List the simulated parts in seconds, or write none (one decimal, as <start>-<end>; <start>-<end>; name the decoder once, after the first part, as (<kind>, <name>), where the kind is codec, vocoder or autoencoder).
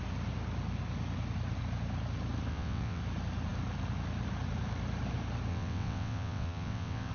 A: 2.5-3.0 (vocoder, WaveNeXt); 5.5-7.1